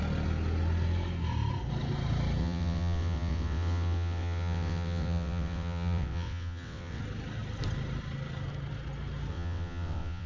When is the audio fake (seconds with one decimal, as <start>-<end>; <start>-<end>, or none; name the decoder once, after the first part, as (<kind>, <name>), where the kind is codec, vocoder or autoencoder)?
2.4-7.0 (vocoder, WaveNeXt); 9.3-10.3